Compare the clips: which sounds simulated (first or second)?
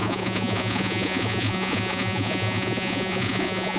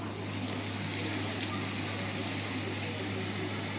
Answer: first